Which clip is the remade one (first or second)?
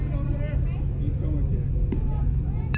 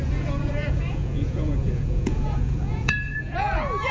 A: second